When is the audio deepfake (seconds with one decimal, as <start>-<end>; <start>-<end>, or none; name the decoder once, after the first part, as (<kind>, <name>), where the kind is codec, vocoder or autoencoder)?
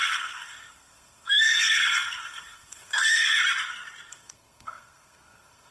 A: 0.0-3.4 (codec, SNAC); 4.1-5.7